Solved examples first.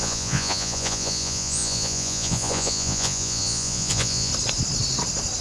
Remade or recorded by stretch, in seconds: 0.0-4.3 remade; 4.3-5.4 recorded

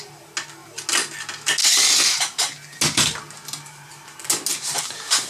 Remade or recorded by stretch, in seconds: 0.0-5.3 recorded

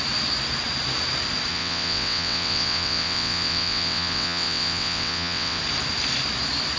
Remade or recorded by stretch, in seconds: 0.0-1.5 recorded; 1.5-5.6 remade; 5.6-6.8 recorded